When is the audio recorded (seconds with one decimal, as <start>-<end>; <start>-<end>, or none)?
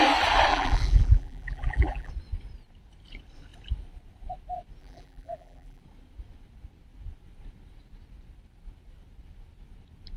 0.0-0.5; 2.1-4.8; 5.8-10.2